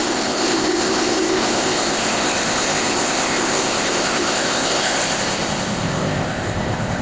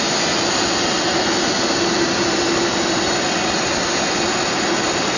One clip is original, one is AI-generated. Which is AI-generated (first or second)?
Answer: first